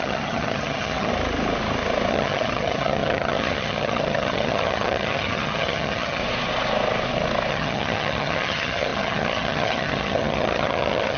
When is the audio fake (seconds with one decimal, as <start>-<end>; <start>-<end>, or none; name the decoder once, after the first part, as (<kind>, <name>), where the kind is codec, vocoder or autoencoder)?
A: 0.0-1.1 (vocoder, HiFi-GAN); 2.1-6.2; 7.5-11.2